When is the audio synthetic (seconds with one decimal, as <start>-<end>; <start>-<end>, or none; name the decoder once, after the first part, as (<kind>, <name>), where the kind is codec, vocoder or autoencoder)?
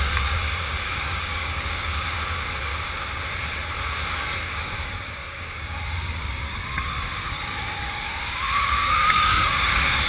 0.0-2.7 (codec, DAC); 4.1-10.1